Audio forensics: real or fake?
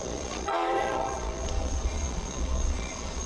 fake